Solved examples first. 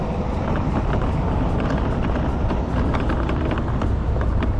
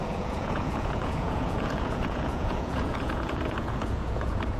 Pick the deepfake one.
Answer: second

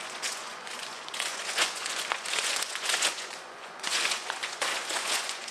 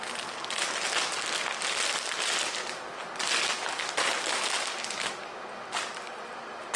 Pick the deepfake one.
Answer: first